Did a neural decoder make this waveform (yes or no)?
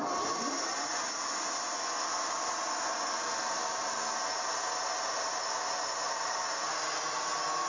no